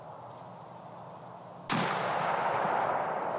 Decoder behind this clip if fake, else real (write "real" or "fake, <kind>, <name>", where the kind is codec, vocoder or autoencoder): real